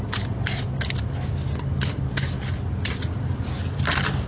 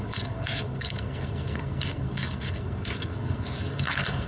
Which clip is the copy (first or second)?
second